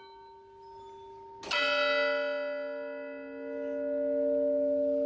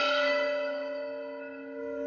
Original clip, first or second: first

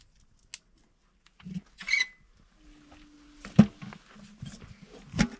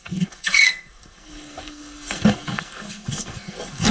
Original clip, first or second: first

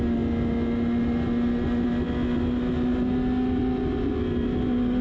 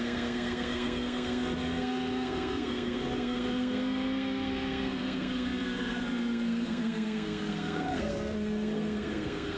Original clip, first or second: first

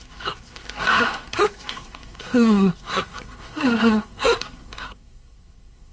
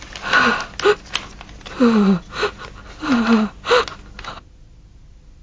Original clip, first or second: second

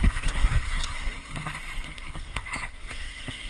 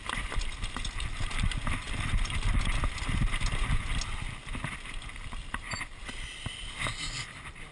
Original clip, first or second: second